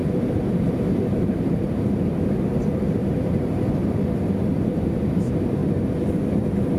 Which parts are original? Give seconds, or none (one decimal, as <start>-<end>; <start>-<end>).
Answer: 3.8-4.5; 5.6-6.3